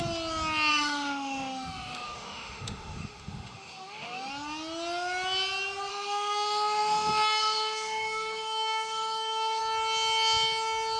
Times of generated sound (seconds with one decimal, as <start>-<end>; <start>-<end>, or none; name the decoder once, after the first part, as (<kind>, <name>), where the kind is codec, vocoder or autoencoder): 0.7-4.3 (autoencoder, DAC-VAE); 5.9-9.6